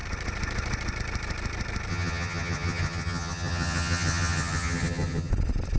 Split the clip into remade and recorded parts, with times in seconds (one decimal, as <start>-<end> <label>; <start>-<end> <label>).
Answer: 0.0-1.9 recorded; 1.9-5.3 remade; 5.3-5.8 recorded